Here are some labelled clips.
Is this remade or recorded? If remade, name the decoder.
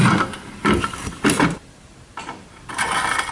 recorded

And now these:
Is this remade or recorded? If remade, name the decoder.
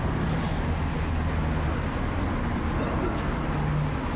recorded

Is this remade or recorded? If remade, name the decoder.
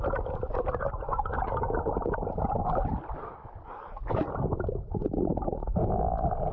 recorded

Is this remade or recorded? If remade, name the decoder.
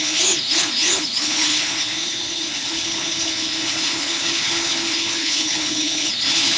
remade, codec, HILCodec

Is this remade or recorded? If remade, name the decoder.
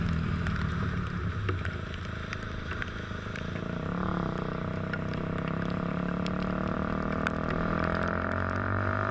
remade, vocoder, BigVGAN v2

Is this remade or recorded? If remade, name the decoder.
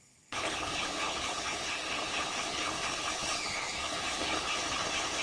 remade, codec, HILCodec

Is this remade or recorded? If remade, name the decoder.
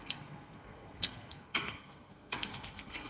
remade, codec, SNAC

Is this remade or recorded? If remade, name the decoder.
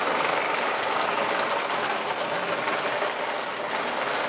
recorded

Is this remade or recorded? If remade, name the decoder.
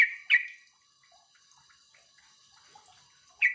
recorded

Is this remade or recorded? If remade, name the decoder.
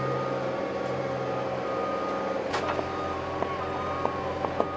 recorded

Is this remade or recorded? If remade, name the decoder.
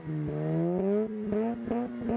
recorded